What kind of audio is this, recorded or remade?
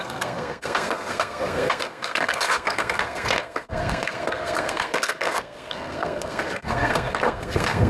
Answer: remade